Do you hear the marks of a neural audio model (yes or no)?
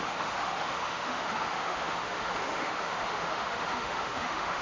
yes